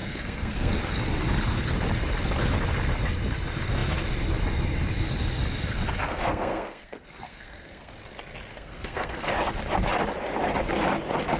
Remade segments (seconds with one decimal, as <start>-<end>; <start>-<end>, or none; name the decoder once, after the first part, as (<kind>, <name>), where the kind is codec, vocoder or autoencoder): 0.0-0.8 (codec, SNAC); 6.0-7.9; 8.5-9.3